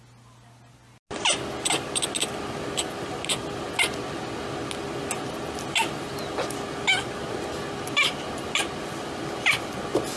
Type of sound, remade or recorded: recorded